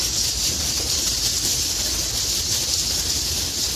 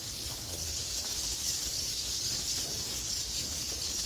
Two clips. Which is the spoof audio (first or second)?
second